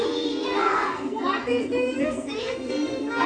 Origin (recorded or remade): remade